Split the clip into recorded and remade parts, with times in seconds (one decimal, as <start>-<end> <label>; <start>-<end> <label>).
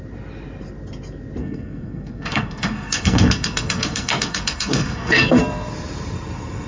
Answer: 0.0-1.4 recorded; 1.4-5.4 remade; 5.4-6.7 recorded